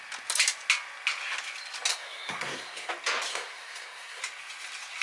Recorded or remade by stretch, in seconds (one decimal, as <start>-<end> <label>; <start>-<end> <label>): 0.0-1.9 recorded; 1.9-2.9 remade; 2.9-3.3 recorded; 3.3-4.2 remade; 4.2-5.0 recorded